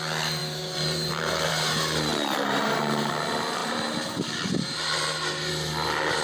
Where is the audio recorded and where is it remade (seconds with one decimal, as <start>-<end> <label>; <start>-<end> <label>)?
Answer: 0.0-0.4 recorded; 0.4-1.5 remade; 1.5-2.1 recorded; 2.1-3.1 remade; 3.1-3.6 recorded; 3.6-5.5 remade; 5.5-6.2 recorded

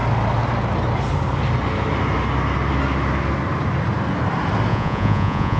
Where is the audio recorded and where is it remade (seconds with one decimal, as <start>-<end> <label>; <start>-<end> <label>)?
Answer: 0.0-4.7 recorded; 4.7-5.6 remade

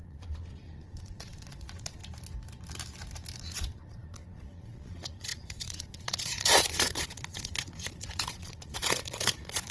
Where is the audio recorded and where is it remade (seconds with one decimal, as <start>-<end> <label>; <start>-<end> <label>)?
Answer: 0.0-2.0 remade; 2.0-3.4 recorded; 3.4-9.7 remade

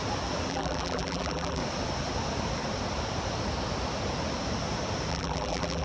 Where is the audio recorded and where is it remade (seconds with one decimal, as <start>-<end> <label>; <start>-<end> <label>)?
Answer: 0.0-0.5 recorded; 0.5-1.6 remade; 1.6-5.1 recorded; 5.1-5.8 remade